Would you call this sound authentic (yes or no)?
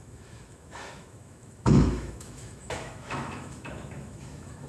no